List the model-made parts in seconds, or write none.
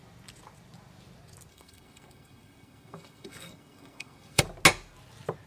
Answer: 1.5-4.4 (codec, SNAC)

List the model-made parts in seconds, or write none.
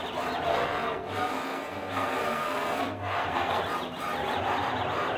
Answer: 0.5-3.6 (codec, SNAC)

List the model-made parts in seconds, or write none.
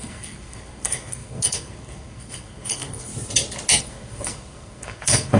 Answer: 0.0-3.1 (codec, SNAC); 3.8-5.4